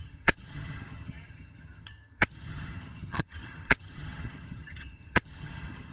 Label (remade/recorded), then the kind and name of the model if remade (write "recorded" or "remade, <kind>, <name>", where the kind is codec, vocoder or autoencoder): remade, vocoder, HiFi-GAN